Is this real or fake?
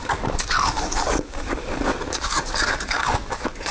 fake